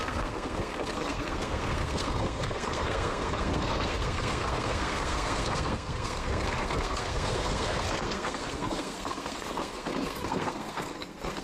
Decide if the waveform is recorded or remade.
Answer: remade